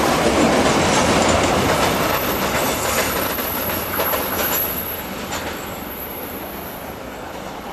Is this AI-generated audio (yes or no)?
no